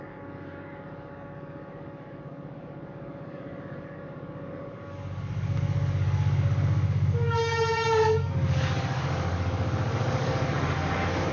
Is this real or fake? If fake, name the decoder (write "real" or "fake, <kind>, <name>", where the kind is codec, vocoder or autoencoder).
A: fake, codec, DAC